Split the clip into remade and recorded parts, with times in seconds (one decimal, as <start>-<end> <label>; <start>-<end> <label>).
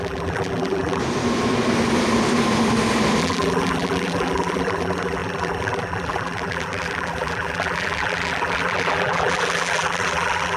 0.0-1.0 remade; 1.0-3.2 recorded; 3.2-10.6 remade